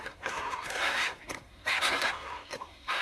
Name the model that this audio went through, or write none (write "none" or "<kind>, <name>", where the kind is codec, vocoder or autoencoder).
codec, SNAC